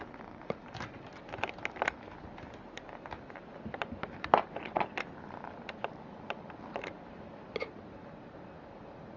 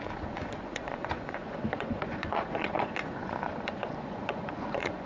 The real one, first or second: first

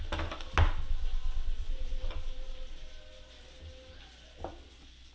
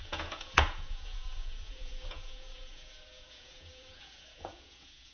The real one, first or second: first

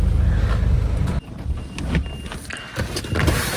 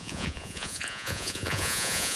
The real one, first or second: first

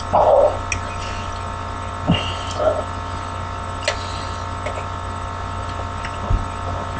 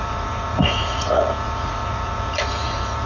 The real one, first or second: first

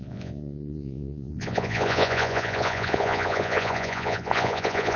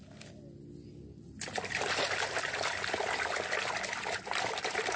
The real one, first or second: second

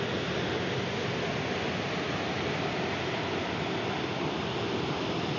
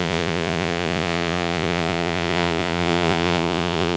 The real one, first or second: first